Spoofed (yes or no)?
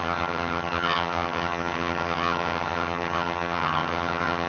yes